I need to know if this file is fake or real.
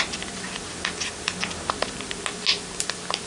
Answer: real